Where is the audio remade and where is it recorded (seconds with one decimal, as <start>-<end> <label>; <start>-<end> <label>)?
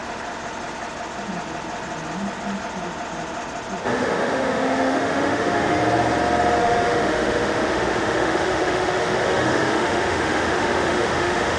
0.0-3.8 recorded; 3.8-5.8 remade; 5.8-6.6 recorded; 6.6-11.6 remade